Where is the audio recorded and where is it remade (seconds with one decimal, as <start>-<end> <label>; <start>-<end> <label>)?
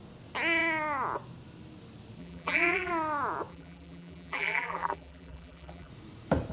0.0-2.2 recorded; 2.2-2.9 remade; 2.9-3.5 recorded; 3.5-5.9 remade; 5.9-6.5 recorded